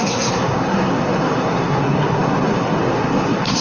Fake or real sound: fake